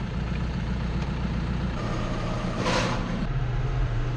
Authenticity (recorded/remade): remade